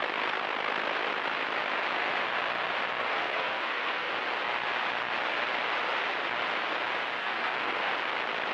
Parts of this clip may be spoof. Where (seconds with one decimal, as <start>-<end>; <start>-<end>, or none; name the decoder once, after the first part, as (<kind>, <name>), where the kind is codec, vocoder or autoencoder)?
3.0-4.1 (codec, SNAC); 7.2-7.9